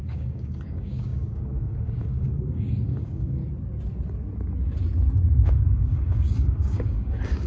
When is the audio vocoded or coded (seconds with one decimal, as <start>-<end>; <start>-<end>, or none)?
0.0-3.4; 5.4-7.5